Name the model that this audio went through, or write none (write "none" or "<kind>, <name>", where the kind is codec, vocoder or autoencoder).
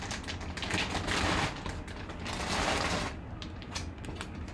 none